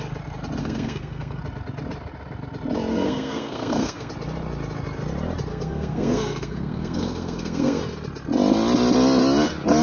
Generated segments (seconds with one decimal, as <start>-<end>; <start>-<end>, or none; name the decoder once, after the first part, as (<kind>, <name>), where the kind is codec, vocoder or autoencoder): 0.6-1.4 (codec, SNAC); 2.9-4.1; 5.5-7.8